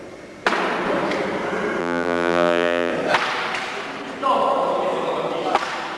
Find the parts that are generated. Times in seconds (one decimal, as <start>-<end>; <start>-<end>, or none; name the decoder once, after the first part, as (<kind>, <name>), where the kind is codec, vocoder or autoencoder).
1.8-2.9 (vocoder, BigVGAN v2)